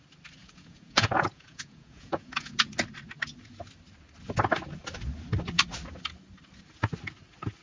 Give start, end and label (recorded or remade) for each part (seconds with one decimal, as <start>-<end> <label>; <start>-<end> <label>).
0.0-0.4 recorded; 0.4-2.7 remade; 2.7-7.6 recorded